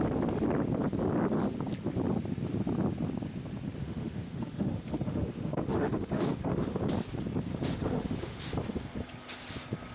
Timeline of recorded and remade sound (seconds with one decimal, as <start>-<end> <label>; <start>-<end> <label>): 0.0-3.8 recorded; 3.8-6.8 remade; 6.8-7.5 recorded; 7.5-8.4 remade; 8.4-9.9 recorded